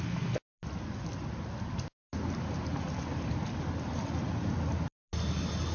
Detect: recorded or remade recorded